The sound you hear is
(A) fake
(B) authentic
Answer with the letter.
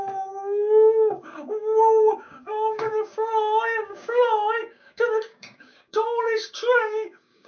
A